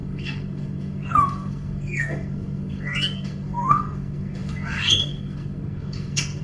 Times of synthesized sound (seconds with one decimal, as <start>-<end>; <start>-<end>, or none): 0.0-6.4